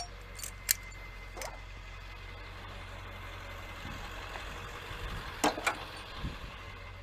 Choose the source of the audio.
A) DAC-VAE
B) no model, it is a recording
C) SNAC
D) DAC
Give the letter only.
B